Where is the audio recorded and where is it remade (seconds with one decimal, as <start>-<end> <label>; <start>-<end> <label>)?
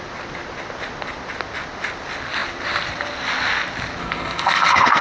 0.0-4.0 recorded; 4.0-5.0 remade